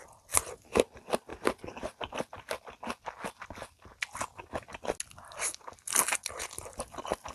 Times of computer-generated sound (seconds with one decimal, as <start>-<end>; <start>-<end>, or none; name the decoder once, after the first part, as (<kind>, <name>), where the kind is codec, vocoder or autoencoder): none